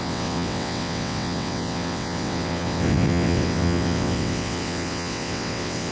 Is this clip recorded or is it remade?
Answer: remade